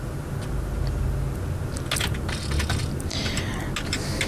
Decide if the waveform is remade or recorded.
recorded